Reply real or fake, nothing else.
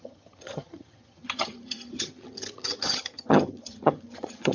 fake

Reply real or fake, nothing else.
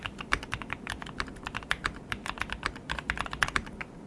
real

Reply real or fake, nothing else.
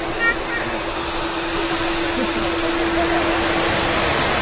real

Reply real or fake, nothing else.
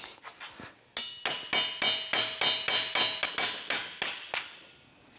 real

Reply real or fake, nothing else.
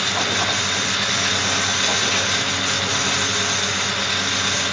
real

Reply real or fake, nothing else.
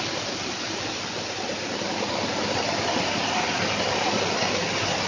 real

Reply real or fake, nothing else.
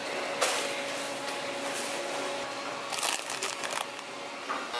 real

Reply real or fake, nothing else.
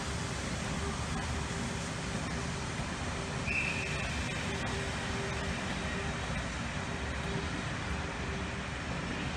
real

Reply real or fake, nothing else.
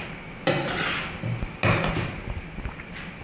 real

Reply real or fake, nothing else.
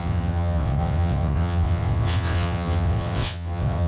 fake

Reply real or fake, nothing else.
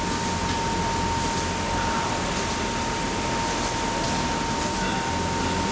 real